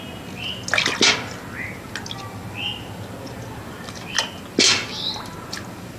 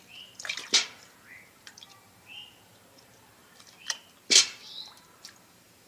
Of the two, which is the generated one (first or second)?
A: second